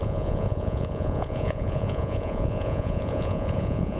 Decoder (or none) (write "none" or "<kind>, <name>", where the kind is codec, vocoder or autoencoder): vocoder, Vocos